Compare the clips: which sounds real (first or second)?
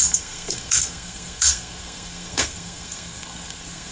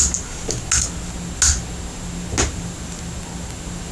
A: second